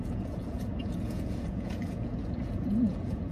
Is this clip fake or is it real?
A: fake